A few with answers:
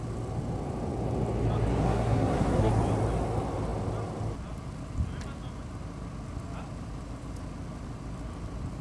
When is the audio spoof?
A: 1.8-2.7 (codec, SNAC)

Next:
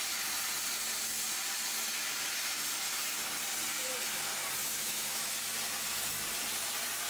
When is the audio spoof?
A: 4.6-5.3 (autoencoder, DAC-VAE)